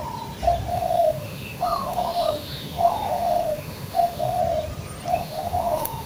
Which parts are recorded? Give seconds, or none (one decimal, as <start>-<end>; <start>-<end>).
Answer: 0.0-0.7; 4.4-5.1